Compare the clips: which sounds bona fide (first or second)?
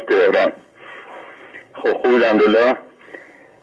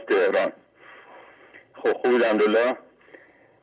second